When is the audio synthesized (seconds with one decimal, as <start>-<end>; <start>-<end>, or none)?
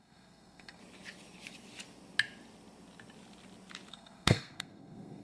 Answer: 0.0-0.8; 3.9-5.2